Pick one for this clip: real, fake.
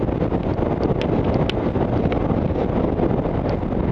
real